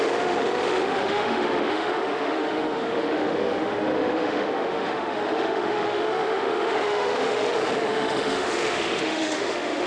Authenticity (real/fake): fake